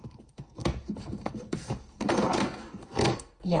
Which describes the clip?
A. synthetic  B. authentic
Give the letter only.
A